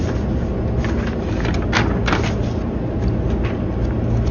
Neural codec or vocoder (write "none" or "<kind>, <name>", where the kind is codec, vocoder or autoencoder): none